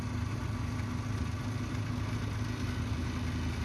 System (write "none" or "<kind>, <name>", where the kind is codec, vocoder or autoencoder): none